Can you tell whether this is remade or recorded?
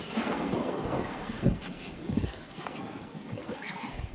remade